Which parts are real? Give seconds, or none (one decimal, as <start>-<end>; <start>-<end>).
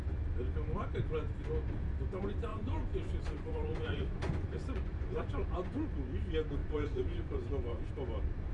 0.0-2.5; 5.9-6.6; 7.9-8.5